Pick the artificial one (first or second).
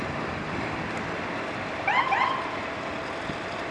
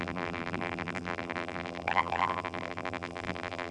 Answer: second